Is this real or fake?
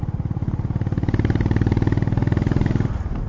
real